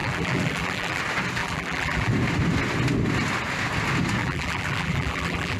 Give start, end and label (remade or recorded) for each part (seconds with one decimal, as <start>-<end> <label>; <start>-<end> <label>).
0.0-1.0 remade; 1.0-1.4 recorded; 1.4-2.1 remade; 2.1-4.2 recorded; 4.2-5.6 remade